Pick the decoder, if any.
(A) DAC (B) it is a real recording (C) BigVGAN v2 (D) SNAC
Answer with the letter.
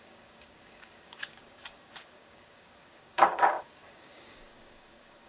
A